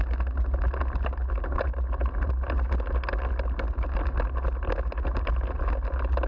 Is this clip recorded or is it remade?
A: recorded